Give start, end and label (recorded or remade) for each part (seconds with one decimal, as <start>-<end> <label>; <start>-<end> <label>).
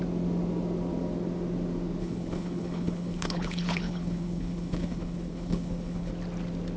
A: 0.0-2.0 recorded; 2.0-6.1 remade; 6.1-6.8 recorded